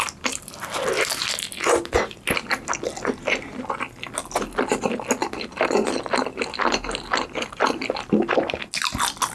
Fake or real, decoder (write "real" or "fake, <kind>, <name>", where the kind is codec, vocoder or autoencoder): real